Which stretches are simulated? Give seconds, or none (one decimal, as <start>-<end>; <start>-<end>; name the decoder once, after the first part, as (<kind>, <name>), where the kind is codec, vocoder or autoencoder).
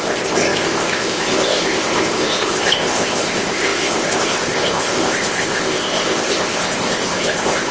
0.0-7.7 (codec, ZipCodec)